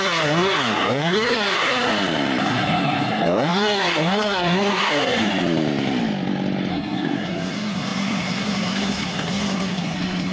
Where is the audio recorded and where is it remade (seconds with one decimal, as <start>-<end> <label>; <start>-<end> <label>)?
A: 0.0-1.9 remade; 1.9-2.4 recorded; 2.4-5.3 remade; 5.3-6.7 recorded; 6.7-10.3 remade